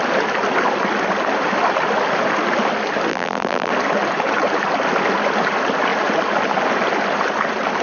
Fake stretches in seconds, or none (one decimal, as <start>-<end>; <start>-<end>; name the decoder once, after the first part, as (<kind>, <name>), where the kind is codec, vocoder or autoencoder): 3.1-3.7 (vocoder, BigVGAN v2)